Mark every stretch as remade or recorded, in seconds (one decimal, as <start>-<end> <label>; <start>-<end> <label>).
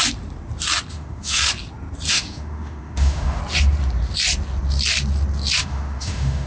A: 0.0-0.9 recorded; 0.9-1.4 remade; 1.4-2.1 recorded; 2.1-3.4 remade; 3.4-5.6 recorded; 5.6-6.5 remade